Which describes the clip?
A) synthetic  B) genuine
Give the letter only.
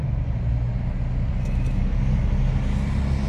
B